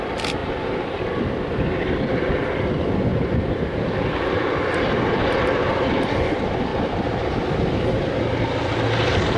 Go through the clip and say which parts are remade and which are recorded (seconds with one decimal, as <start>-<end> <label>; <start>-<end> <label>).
0.0-3.1 recorded; 3.1-4.5 remade; 4.5-6.7 recorded; 6.7-8.0 remade; 8.0-9.4 recorded